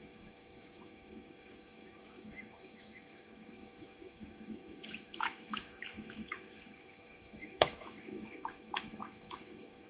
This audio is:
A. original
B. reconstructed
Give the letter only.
B